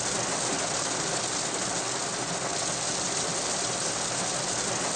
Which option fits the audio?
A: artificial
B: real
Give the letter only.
B